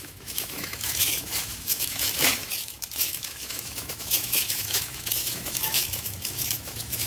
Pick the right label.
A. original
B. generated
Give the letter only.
B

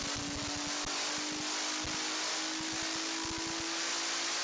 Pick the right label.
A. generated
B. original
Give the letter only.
B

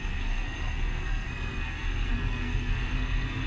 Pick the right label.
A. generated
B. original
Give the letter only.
A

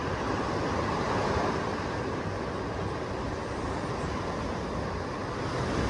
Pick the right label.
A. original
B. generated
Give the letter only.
A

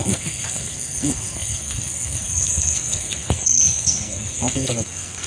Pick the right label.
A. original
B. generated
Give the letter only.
B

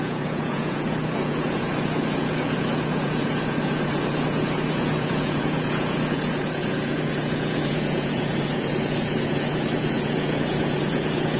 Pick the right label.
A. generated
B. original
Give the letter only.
A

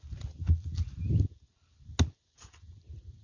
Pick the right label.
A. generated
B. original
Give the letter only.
B